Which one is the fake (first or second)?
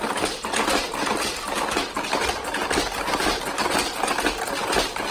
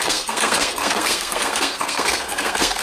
second